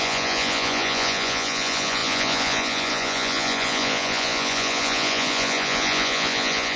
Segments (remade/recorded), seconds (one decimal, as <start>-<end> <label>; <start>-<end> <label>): 0.0-6.8 remade